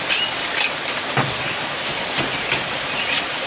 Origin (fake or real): real